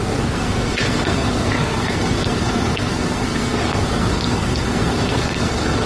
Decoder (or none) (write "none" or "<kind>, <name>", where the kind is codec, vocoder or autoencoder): codec, SNAC